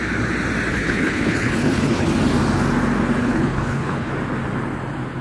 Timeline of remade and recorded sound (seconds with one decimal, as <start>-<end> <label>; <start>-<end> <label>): 0.0-0.7 recorded; 0.7-2.1 remade; 2.1-3.2 recorded; 3.2-4.1 remade; 4.1-5.2 recorded